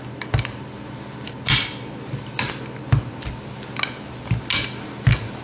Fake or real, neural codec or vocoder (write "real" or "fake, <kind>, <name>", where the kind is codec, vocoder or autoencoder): real